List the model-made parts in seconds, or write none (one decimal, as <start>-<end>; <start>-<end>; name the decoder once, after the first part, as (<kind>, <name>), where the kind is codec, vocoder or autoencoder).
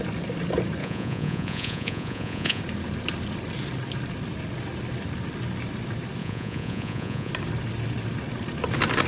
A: 0.8-2.6 (vocoder, Vocos); 6.2-7.3